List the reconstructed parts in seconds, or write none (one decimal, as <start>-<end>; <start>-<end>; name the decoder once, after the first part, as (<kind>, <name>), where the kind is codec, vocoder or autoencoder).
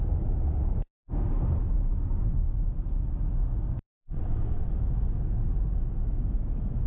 4.0-4.7 (vocoder, WaveNeXt)